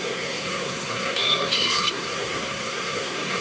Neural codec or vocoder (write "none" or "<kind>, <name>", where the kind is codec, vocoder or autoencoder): codec, SNAC